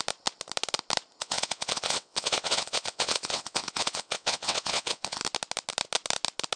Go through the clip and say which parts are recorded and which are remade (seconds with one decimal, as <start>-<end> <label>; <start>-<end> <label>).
0.0-1.2 recorded; 1.2-5.2 remade; 5.2-6.6 recorded